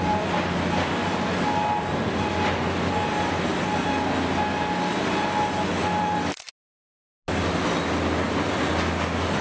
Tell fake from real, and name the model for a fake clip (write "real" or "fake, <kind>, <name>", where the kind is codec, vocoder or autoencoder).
real